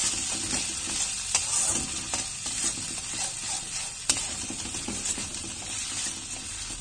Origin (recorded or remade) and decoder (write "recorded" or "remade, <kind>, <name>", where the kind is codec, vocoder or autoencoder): recorded